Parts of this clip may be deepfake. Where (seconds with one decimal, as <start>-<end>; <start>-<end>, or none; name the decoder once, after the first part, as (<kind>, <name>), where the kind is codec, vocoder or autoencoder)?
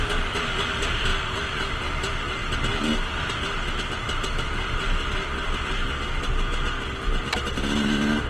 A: none